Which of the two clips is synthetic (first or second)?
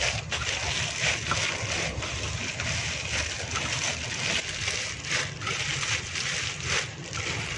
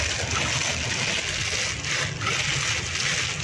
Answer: first